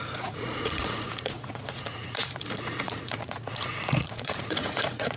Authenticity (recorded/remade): remade